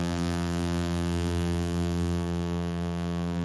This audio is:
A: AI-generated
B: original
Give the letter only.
A